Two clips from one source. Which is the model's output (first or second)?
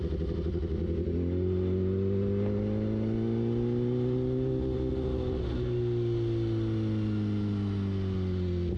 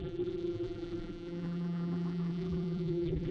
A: second